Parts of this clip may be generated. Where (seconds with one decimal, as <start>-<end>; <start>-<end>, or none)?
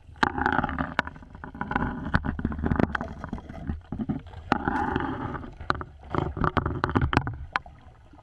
2.8-7.7